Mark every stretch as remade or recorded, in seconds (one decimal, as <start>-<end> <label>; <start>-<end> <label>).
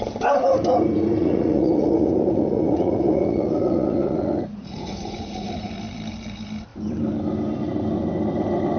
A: 0.0-1.2 recorded; 1.2-5.7 remade; 5.7-8.8 recorded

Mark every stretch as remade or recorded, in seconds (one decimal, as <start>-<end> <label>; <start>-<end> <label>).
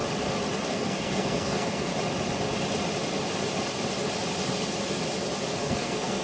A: 0.0-0.7 recorded; 0.7-1.9 remade; 1.9-5.6 recorded; 5.6-6.2 remade